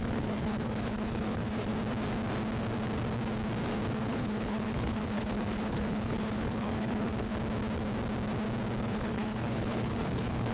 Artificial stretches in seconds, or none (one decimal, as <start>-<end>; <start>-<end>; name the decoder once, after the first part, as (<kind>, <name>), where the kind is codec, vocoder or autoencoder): 0.0-1.7 (codec, HILCodec); 3.9-7.3; 8.8-10.5